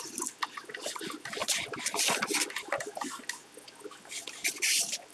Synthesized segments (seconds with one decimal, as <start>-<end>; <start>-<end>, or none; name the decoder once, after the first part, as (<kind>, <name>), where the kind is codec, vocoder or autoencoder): none